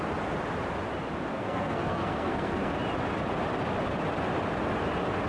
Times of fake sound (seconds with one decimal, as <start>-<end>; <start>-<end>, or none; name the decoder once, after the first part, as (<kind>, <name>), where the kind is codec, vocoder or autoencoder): 1.3-2.8 (codec, SNAC)

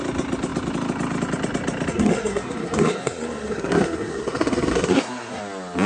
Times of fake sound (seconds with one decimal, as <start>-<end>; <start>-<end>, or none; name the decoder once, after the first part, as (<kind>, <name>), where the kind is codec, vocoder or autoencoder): 1.9-5.4 (codec, SNAC)

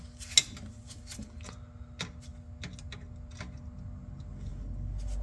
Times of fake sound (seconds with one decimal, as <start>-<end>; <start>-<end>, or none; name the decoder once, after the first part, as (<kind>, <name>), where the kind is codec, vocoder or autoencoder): none

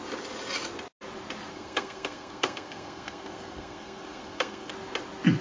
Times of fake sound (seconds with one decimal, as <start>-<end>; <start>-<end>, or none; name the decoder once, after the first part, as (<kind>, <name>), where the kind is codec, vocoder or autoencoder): 1.5-4.7 (codec, SNAC)

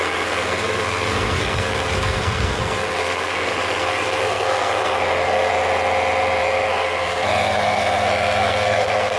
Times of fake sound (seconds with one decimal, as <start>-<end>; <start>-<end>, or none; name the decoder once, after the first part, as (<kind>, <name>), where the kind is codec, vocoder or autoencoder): 0.0-5.5 (codec, SNAC); 6.4-9.2